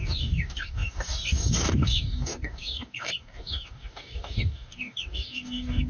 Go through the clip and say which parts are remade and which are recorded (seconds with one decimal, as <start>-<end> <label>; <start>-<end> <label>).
0.0-5.9 remade